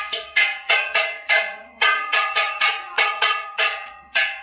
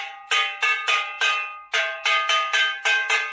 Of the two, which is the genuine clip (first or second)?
second